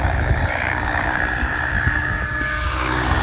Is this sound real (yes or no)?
no